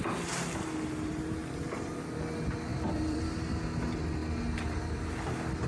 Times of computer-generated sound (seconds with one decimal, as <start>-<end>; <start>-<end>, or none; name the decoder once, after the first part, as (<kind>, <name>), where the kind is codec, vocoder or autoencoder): 2.7-3.2 (vocoder, BigVGAN v2)

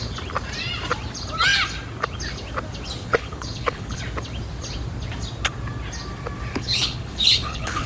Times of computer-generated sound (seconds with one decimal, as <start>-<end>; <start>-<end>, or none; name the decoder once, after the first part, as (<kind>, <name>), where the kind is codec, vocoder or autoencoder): 3.0-4.0 (codec, HILCodec); 6.5-7.9

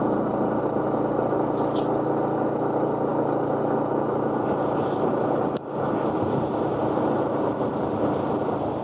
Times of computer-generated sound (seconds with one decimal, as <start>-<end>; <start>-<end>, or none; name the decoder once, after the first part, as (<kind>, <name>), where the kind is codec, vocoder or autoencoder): none

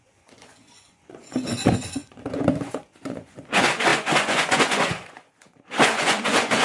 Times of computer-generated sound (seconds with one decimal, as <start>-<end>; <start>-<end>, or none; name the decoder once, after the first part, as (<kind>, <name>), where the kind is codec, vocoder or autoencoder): 0.0-6.6 (vocoder, Vocos)